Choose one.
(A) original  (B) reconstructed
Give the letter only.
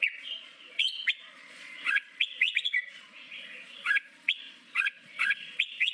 B